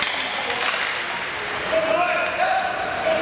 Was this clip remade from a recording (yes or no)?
no